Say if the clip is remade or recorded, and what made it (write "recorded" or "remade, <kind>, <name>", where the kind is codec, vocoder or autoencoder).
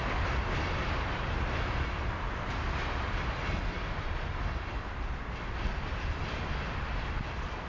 recorded